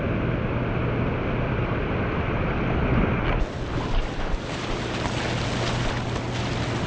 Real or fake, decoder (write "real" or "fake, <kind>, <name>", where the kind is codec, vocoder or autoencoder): real